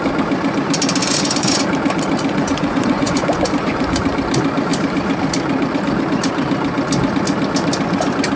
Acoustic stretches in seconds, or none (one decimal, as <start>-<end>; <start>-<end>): 0.0-1.0; 1.6-2.3; 4.0-8.4